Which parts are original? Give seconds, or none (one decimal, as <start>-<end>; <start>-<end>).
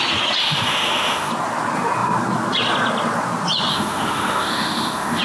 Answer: 0.0-0.4; 1.3-3.7